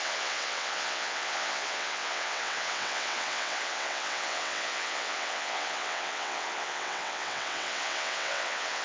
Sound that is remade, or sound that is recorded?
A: remade